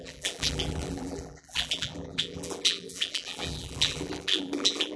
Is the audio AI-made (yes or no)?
yes